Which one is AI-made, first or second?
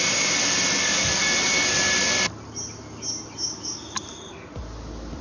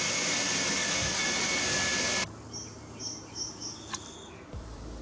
second